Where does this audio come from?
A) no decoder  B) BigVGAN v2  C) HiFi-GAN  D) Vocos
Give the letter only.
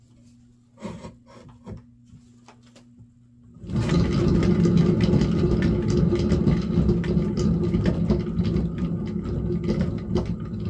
A